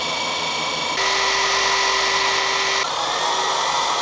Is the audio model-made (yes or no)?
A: no